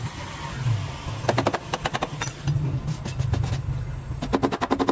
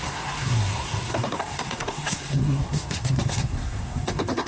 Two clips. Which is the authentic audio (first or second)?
first